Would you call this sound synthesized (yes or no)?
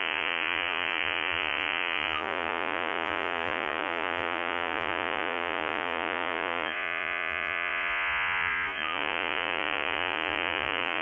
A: yes